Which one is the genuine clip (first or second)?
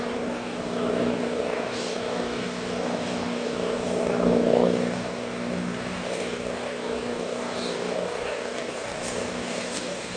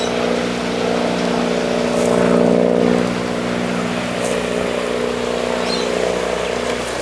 second